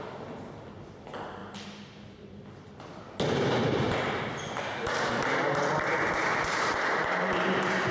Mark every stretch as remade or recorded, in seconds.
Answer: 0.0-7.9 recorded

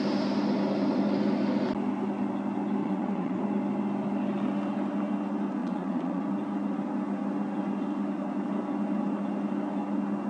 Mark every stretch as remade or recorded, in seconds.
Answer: 0.0-2.8 recorded; 2.8-3.4 remade; 3.4-5.6 recorded; 5.6-6.2 remade; 6.2-10.3 recorded